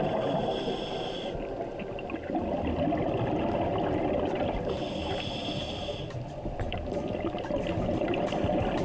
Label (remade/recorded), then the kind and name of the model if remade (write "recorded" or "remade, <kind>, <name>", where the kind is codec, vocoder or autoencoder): recorded